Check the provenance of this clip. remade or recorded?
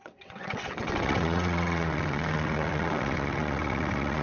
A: remade